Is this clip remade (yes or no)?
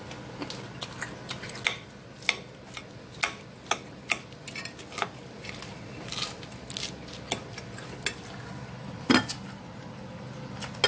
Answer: no